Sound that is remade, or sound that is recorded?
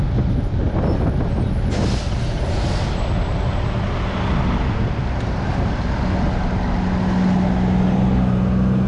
recorded